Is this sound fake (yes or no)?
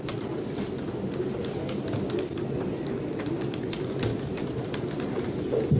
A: no